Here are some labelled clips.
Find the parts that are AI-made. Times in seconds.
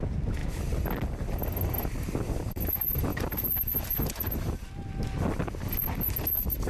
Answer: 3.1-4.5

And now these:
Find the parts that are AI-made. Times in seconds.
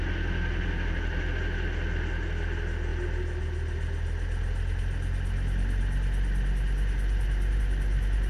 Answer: none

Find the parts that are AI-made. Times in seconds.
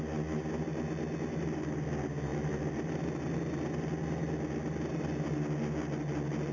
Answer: 2.3-2.9